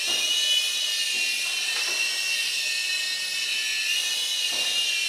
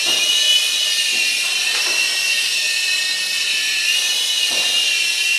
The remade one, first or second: second